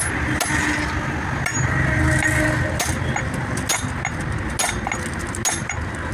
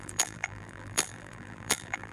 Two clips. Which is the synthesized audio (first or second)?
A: second